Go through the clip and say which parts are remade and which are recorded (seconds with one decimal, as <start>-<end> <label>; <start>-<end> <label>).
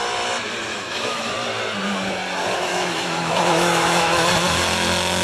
0.0-0.7 recorded; 0.7-1.3 remade; 1.3-2.7 recorded; 2.7-4.3 remade; 4.3-5.2 recorded